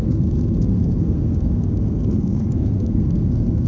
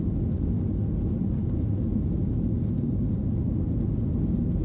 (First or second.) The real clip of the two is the second